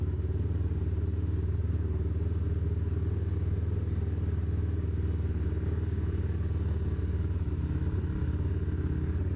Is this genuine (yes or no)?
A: yes